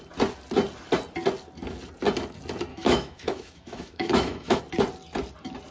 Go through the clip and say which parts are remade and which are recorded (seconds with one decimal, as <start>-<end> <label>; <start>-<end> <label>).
0.0-2.7 recorded; 2.7-4.6 remade; 4.6-5.7 recorded